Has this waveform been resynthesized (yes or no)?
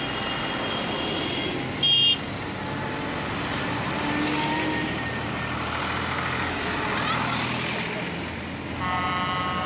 no